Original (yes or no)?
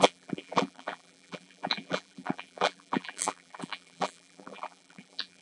no